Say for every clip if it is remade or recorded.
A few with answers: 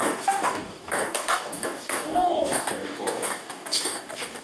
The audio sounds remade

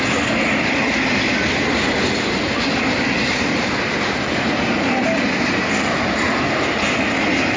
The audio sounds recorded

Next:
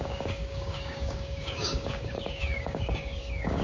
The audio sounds remade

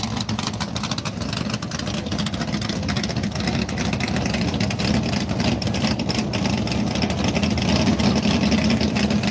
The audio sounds recorded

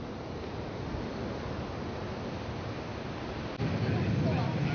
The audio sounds recorded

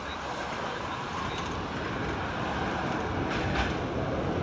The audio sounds recorded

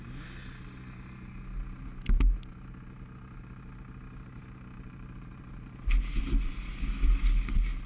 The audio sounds recorded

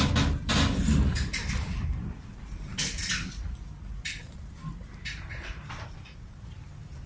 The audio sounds recorded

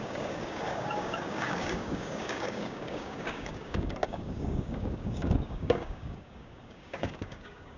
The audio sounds remade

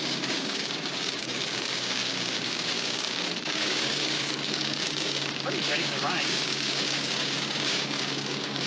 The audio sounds remade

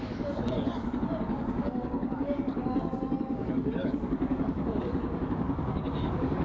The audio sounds remade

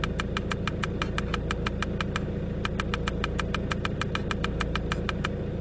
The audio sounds recorded